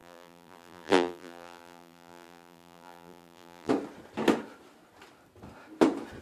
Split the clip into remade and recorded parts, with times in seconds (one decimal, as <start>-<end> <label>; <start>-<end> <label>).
0.0-3.7 remade; 3.7-6.2 recorded